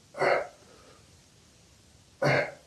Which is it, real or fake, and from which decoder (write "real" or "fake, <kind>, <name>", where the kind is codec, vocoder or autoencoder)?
real